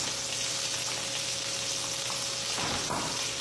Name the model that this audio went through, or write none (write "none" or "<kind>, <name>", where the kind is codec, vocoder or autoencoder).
none